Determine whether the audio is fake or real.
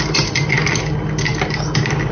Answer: real